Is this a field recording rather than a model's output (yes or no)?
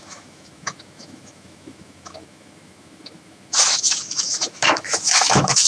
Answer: no